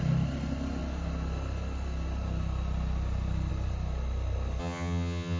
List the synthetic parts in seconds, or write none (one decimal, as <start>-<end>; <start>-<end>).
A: 4.6-5.4